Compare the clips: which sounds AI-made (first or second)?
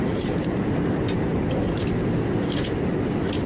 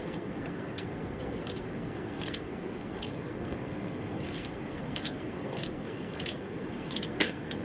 second